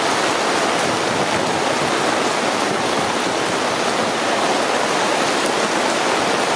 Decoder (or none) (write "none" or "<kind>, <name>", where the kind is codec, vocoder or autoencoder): none